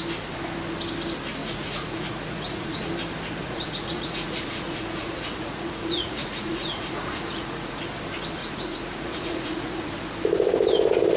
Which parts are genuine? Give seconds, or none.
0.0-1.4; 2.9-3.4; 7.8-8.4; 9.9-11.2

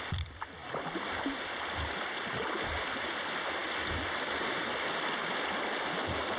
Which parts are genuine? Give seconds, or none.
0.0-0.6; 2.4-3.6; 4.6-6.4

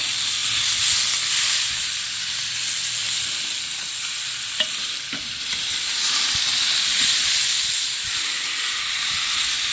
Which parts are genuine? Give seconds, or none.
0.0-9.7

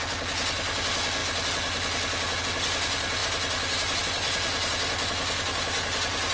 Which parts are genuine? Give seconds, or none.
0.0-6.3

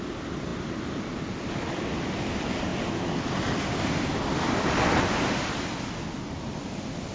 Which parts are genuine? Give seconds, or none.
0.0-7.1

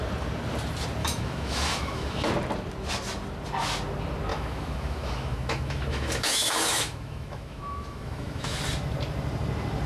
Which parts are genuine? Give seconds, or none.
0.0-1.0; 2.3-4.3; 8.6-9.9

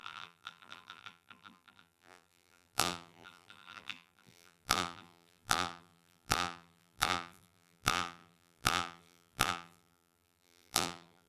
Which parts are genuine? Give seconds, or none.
none

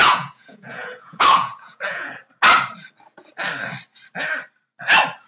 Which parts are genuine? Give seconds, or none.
2.1-5.3